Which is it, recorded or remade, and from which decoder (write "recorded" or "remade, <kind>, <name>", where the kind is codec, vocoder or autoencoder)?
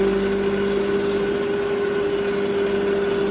recorded